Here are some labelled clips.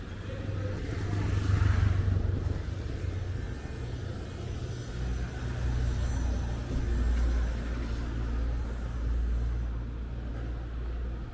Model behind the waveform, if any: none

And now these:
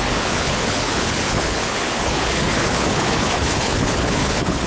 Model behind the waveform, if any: codec, HILCodec